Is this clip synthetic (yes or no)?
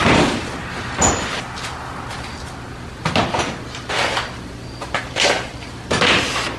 no